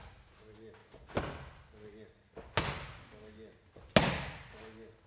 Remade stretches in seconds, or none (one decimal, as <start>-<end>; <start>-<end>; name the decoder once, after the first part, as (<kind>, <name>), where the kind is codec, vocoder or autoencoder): none